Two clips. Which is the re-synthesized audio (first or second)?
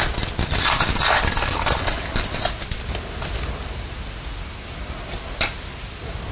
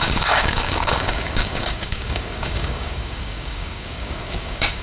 second